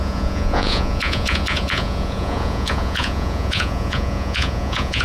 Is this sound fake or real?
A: fake